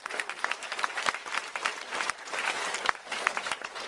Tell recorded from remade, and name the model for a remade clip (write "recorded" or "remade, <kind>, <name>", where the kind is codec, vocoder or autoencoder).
remade, vocoder, BigVGAN v2